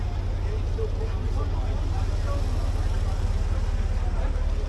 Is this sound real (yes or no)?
yes